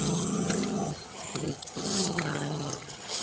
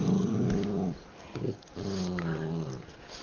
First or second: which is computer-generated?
first